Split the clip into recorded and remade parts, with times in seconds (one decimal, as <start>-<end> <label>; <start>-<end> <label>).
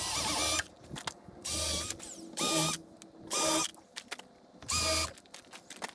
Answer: 0.0-5.9 recorded